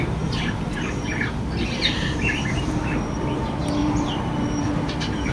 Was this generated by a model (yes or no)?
yes